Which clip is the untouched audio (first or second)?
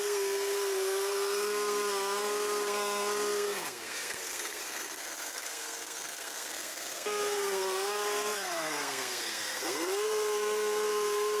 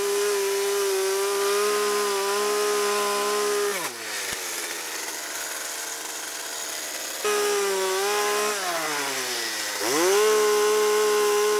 second